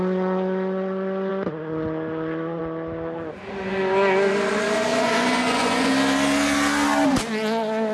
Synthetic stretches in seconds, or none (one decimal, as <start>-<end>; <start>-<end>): 4.9-5.9